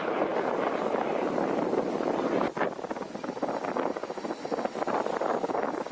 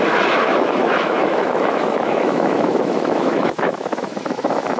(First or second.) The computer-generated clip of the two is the second